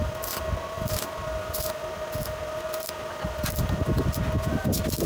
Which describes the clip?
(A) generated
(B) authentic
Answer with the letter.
B